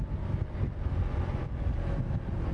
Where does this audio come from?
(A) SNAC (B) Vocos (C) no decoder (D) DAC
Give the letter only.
C